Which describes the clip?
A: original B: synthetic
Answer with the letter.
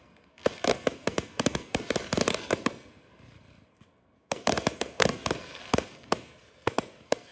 B